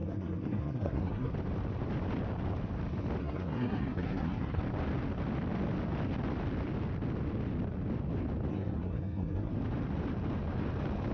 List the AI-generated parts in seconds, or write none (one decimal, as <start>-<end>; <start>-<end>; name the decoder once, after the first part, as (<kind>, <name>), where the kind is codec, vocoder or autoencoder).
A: 0.0-1.3 (codec, SNAC); 3.2-4.6; 8.5-9.5